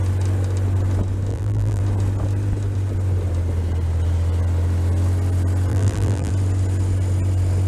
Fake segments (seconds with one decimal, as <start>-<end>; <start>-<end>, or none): 1.3-1.8; 5.7-6.3